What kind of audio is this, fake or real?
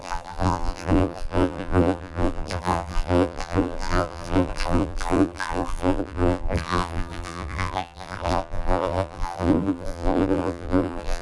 fake